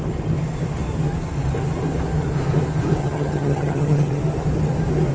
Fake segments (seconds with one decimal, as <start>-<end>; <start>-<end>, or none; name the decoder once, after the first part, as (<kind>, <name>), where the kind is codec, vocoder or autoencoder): 3.0-4.2 (vocoder, HiFi-GAN)